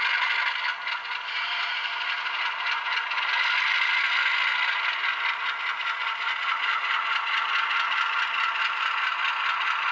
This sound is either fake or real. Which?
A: real